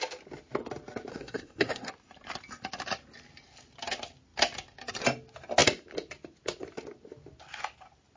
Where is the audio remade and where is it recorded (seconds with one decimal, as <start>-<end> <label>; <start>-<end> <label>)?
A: 0.0-1.1 recorded; 1.1-1.9 remade; 1.9-8.2 recorded